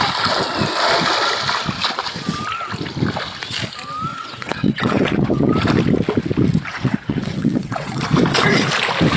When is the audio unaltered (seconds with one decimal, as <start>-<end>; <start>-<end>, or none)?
0.0-4.1; 5.5-6.7; 8.0-9.2